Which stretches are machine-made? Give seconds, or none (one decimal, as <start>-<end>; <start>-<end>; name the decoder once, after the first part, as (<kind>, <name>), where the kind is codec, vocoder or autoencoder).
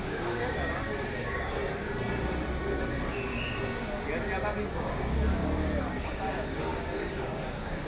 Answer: 0.0-1.6 (codec, DAC); 4.6-5.4; 5.9-7.9